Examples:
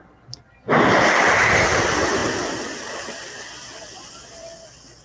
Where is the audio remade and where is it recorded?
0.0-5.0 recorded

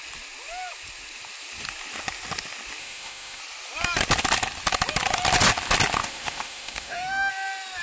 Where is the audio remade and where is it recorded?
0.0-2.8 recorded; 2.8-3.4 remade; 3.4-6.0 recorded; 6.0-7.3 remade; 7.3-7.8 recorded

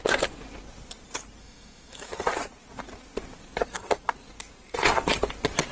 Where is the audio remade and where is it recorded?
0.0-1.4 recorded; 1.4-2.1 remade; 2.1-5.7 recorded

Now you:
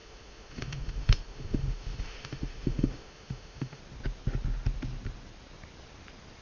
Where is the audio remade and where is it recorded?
0.0-3.8 remade; 3.8-6.4 recorded